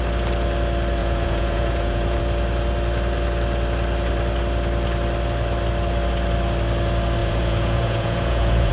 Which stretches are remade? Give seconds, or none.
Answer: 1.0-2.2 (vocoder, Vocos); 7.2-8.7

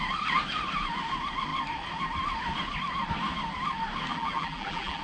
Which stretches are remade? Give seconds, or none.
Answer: 4.1-5.0 (vocoder, BigVGAN v2)

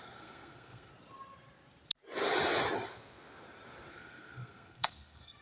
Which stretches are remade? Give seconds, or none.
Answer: 0.0-0.9 (codec, SNAC); 3.9-5.4

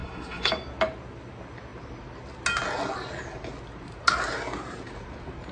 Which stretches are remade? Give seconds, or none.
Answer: 0.0-0.5 (codec, SNAC)